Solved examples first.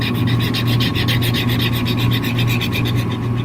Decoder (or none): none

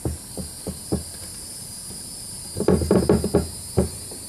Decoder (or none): none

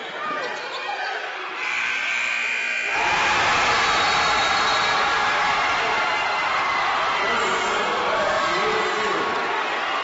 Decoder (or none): none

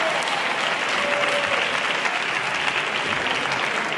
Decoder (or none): none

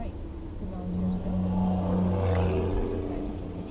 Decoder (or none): none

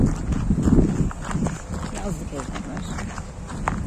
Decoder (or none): none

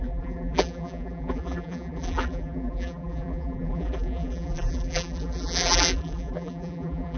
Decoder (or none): vocoder, BigVGAN v2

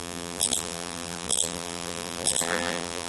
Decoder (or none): vocoder, BigVGAN v2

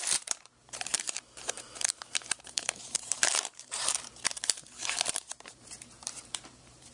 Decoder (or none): vocoder, BigVGAN v2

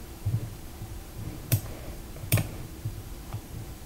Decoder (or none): vocoder, BigVGAN v2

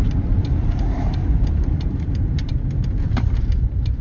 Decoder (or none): vocoder, BigVGAN v2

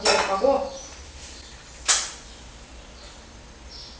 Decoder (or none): none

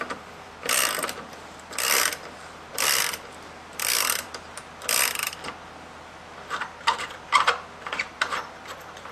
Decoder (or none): vocoder, BigVGAN v2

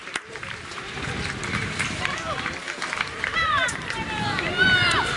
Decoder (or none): vocoder, BigVGAN v2